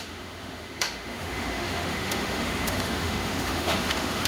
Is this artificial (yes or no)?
yes